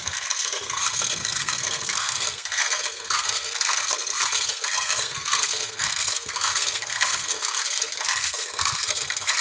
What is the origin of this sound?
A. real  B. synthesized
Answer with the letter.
B